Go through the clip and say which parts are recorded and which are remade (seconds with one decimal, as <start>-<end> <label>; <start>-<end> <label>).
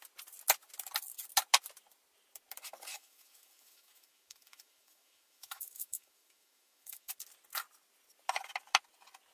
0.0-2.9 recorded; 2.9-7.1 remade; 7.1-9.3 recorded